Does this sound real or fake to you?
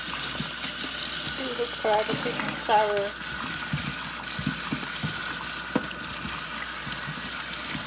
real